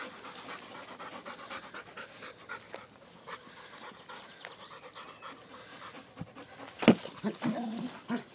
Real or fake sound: real